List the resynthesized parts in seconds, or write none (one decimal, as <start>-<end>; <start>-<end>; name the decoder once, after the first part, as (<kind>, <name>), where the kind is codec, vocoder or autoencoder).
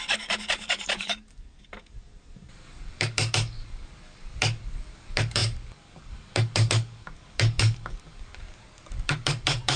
0.0-9.8 (codec, DAC)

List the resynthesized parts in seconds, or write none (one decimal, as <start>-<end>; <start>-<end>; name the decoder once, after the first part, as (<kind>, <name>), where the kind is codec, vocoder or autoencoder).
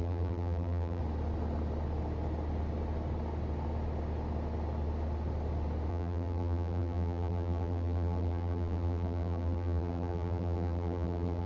0.0-1.0 (vocoder, BigVGAN v2); 5.9-11.5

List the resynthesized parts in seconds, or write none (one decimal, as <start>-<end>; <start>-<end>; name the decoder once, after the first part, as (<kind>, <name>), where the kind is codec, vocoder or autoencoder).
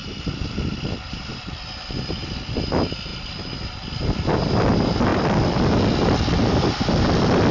0.0-1.6 (vocoder, BigVGAN v2); 3.1-3.9; 5.1-5.7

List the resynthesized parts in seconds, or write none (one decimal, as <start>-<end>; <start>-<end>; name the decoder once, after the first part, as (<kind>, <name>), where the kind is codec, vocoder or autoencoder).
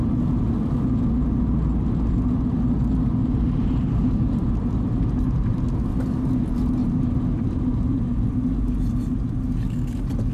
3.2-5.2 (vocoder, BigVGAN v2); 6.8-8.3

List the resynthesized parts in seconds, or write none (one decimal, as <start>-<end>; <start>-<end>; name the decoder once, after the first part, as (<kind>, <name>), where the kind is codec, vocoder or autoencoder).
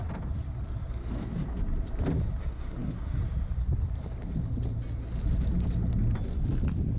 2.4-3.2 (codec, SNAC)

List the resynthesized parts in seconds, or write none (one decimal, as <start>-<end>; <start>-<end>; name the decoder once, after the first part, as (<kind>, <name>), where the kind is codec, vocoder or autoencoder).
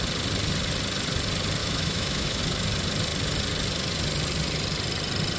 1.6-2.4 (autoencoder, DAC-VAE)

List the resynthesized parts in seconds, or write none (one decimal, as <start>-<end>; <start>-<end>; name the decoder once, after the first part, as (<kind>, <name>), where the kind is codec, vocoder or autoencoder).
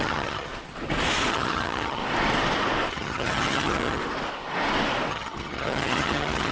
0.0-0.5 (vocoder, HiFi-GAN); 1.3-2.0; 2.9-4.0; 5.1-6.5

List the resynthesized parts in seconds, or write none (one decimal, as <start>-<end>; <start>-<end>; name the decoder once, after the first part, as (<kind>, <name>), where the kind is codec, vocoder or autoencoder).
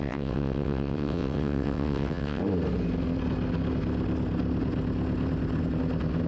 0.0-2.4 (vocoder, WaveNeXt)